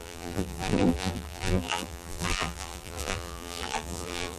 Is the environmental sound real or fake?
fake